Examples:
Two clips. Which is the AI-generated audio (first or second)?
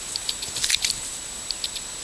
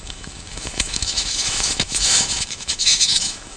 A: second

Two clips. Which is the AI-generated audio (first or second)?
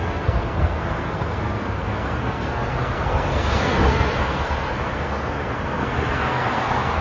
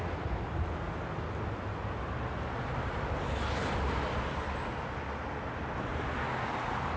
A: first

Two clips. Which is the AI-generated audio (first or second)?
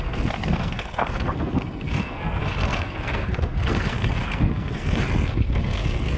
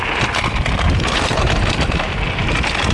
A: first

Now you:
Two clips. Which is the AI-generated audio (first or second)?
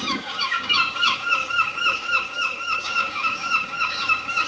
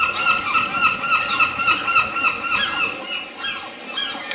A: first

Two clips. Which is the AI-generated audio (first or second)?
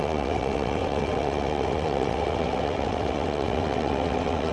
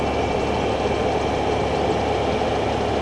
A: first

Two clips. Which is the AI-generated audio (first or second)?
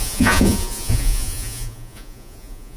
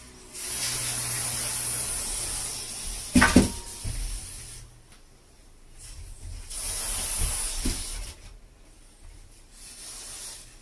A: first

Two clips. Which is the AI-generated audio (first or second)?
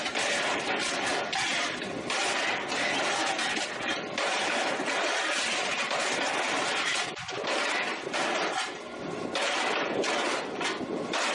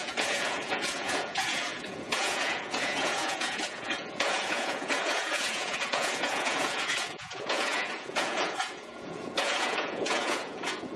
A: second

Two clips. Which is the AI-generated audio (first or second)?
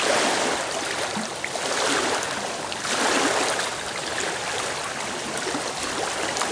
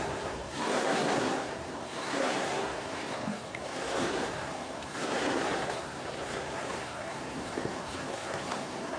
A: second